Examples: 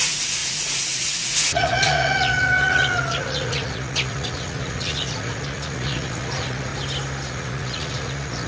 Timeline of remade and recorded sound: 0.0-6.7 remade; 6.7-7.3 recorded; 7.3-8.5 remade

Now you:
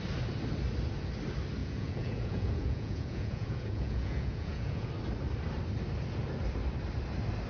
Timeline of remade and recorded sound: 0.0-1.6 recorded; 1.6-4.9 remade; 4.9-7.5 recorded

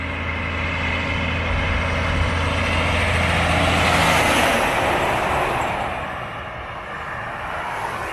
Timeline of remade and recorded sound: 0.0-8.1 recorded

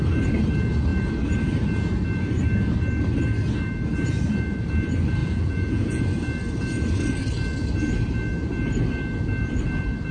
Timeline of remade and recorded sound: 0.0-5.2 recorded; 5.2-6.0 remade; 6.0-10.1 recorded

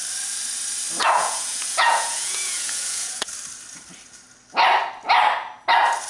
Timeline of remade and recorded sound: 0.0-1.0 recorded; 1.0-3.3 remade; 3.3-6.1 recorded

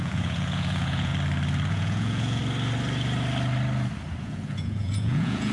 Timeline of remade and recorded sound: 0.0-1.1 remade; 1.1-1.7 recorded; 1.7-2.4 remade; 2.4-4.2 recorded; 4.2-5.5 remade

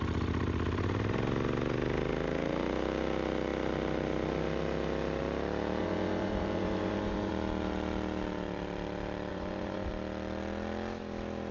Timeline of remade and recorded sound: 0.0-5.8 recorded; 5.8-7.3 remade; 7.3-9.3 recorded; 9.3-9.9 remade; 9.9-11.5 recorded

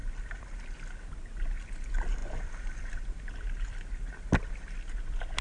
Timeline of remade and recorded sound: 0.0-5.4 recorded